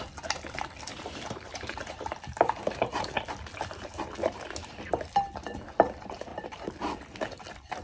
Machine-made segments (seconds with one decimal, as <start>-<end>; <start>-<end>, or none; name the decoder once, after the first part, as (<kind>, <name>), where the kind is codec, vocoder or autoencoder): 0.9-3.0 (vocoder, BigVGAN v2); 6.3-6.8